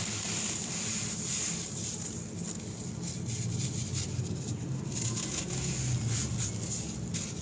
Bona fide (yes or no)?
yes